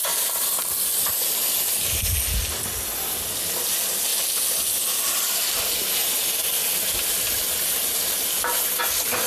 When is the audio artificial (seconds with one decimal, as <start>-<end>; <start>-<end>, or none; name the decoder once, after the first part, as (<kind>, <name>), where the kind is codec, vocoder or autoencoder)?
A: none